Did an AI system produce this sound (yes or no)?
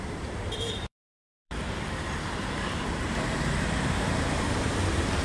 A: yes